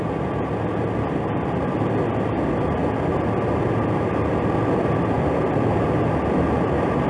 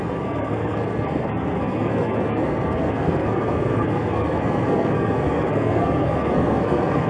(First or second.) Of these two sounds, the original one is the first